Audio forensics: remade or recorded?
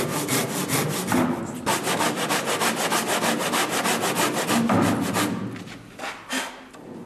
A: recorded